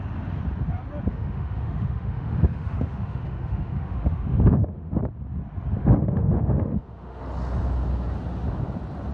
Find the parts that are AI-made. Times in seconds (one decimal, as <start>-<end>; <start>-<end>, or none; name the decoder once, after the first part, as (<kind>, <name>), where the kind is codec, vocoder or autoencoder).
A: 1.1-5.0 (autoencoder, DAC-VAE); 5.8-7.2